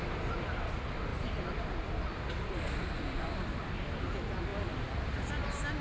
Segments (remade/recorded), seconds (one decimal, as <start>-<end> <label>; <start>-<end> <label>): 0.0-1.1 recorded; 1.1-4.0 remade; 4.0-4.5 recorded; 4.5-5.3 remade; 5.3-5.8 recorded